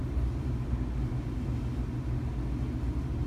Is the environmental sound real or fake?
real